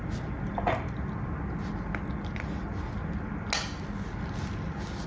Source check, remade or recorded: recorded